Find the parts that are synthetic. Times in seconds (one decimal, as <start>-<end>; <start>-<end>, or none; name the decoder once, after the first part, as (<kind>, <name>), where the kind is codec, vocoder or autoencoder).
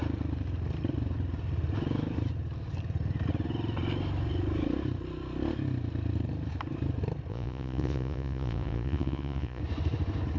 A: 7.3-9.6 (vocoder, Vocos)